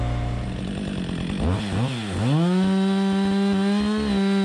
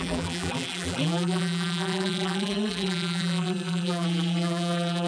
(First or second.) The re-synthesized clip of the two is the second